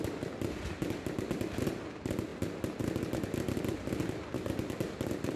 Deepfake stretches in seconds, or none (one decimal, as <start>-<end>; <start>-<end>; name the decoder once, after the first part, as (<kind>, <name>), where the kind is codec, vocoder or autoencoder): none